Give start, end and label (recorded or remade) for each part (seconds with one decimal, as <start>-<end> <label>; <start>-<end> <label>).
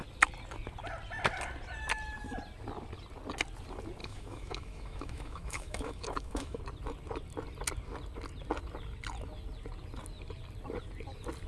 0.0-4.0 recorded; 4.0-6.6 remade; 6.6-11.5 recorded